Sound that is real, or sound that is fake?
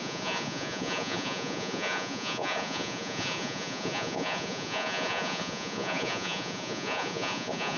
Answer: fake